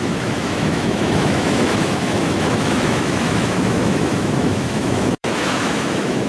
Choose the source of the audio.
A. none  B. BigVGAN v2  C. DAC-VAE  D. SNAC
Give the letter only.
C